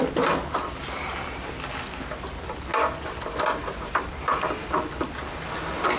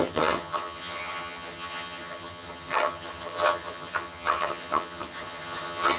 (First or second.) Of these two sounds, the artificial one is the second